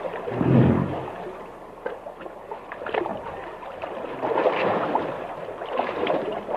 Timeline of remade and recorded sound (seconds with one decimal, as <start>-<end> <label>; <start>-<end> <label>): 0.0-3.1 recorded; 3.1-5.0 remade; 5.0-5.4 recorded; 5.4-6.6 remade

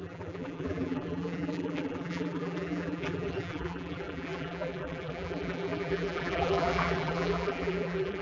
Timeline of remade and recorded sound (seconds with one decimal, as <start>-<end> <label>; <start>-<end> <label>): 0.0-8.2 remade

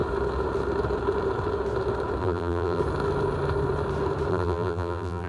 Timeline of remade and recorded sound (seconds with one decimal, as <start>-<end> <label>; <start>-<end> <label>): 0.0-2.2 recorded; 2.2-2.8 remade; 2.8-4.3 recorded; 4.3-5.3 remade

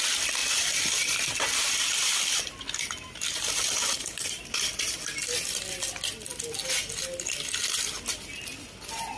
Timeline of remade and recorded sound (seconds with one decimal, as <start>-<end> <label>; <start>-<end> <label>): 0.0-0.4 recorded; 0.4-5.0 remade; 5.0-9.2 recorded

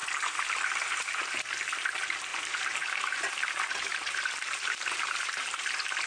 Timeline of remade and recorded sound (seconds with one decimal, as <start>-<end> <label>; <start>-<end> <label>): 0.0-1.4 remade; 1.4-2.3 recorded; 2.3-3.3 remade; 3.3-3.9 recorded; 3.9-5.6 remade; 5.6-6.1 recorded

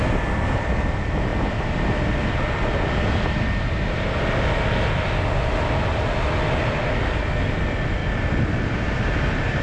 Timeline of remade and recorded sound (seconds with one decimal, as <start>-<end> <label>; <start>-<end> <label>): 0.0-8.0 recorded; 8.0-9.6 remade

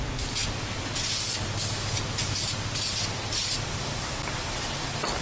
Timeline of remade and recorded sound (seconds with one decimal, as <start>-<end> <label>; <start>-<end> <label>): 0.0-5.2 recorded

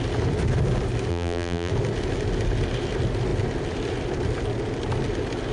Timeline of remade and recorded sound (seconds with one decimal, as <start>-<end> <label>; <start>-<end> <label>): 0.0-1.1 recorded; 1.1-1.7 remade; 1.7-5.5 recorded